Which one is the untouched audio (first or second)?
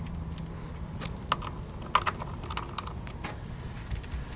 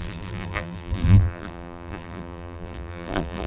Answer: first